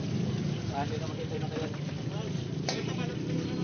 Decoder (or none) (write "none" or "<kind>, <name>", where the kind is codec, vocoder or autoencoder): vocoder, BigVGAN v2